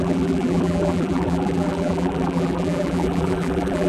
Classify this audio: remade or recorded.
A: remade